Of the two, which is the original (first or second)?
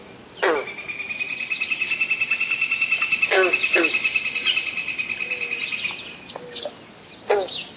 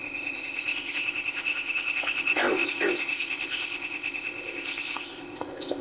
first